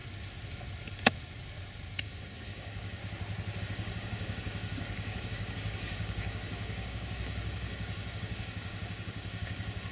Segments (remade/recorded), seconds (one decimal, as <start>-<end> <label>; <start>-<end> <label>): 0.0-2.0 recorded; 2.0-3.0 remade; 3.0-3.6 recorded; 3.6-9.9 remade